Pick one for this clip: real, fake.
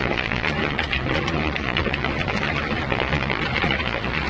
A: fake